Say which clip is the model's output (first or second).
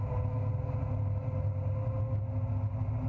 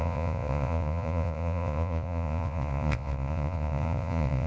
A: second